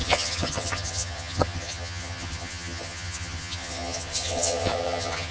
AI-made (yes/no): yes